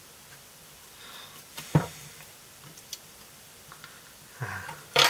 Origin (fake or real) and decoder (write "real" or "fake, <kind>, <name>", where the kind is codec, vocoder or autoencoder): fake, vocoder, BigVGAN v2